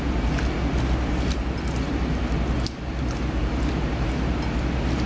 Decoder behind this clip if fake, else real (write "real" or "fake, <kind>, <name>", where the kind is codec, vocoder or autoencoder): real